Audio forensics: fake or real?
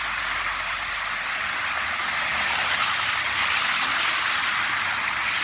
real